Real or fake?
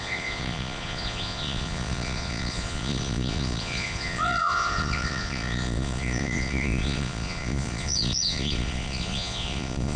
fake